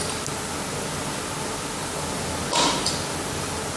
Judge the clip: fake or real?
real